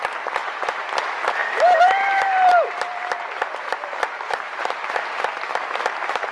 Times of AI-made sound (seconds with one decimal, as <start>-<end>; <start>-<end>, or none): 0.4-0.9; 1.4-5.0